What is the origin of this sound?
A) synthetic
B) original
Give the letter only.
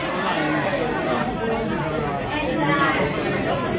B